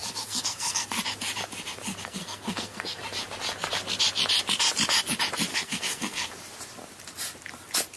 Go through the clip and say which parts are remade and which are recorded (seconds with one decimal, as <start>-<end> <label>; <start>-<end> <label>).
0.0-0.9 remade; 0.9-2.0 recorded; 2.0-3.0 remade; 3.0-5.5 recorded; 5.5-6.3 remade; 6.3-8.0 recorded